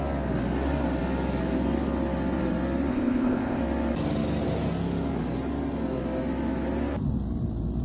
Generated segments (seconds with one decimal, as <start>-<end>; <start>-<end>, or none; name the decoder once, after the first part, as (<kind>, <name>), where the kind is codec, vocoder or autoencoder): 2.9-3.6 (codec, ZipCodec)